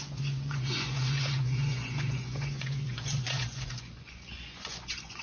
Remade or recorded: remade